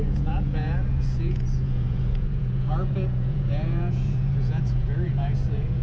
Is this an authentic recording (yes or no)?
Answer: no